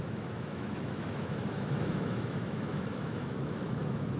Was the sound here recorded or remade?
remade